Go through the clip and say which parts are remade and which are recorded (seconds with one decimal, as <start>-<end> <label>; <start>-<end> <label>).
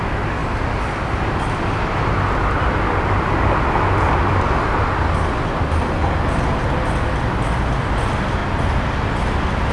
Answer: 0.0-9.7 recorded